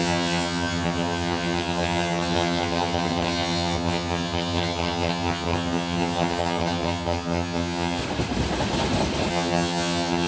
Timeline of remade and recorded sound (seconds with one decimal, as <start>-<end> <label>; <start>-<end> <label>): 0.0-8.0 remade; 8.0-9.3 recorded; 9.3-10.3 remade